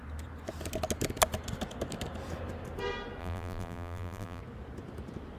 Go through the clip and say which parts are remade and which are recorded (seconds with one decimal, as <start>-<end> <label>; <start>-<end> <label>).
0.0-3.2 recorded; 3.2-4.4 remade; 4.4-5.4 recorded